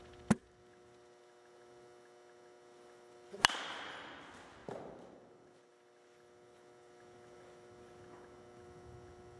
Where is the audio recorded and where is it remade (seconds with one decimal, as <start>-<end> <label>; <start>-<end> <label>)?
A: 0.0-9.4 recorded